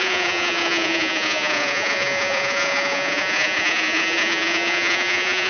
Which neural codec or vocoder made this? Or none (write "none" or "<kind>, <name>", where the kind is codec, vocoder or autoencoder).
vocoder, Vocos